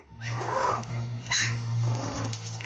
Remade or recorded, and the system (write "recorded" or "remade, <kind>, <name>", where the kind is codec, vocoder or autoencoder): remade, autoencoder, DAC-VAE